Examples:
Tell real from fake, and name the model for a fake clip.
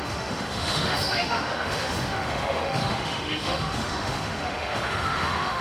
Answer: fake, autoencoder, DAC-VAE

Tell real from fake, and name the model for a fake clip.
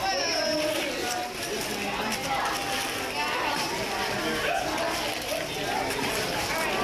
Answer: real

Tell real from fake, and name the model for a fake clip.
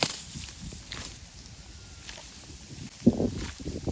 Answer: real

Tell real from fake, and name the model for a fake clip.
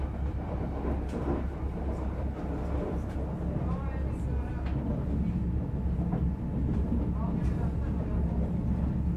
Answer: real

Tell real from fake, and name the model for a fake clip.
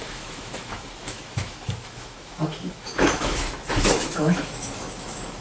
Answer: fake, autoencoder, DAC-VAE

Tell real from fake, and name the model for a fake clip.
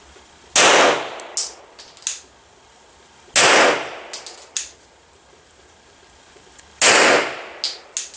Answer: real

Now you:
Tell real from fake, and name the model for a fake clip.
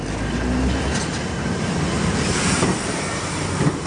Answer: real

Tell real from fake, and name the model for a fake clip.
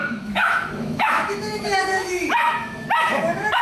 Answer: fake, autoencoder, DAC-VAE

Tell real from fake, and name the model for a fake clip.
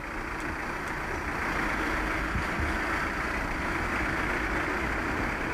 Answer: real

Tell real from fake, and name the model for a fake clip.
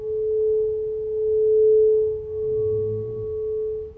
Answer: real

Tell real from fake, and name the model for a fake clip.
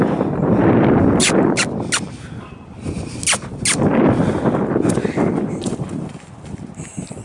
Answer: real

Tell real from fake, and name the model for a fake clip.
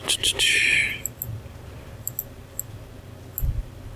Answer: real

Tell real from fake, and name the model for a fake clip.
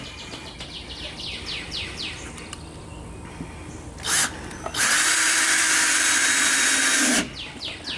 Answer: real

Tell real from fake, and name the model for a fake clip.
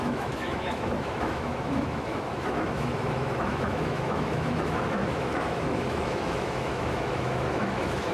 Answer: fake, autoencoder, DAC-VAE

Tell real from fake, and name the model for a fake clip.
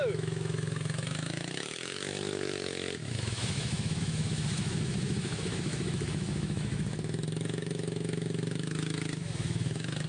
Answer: fake, autoencoder, DAC-VAE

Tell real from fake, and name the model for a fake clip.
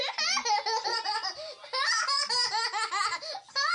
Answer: real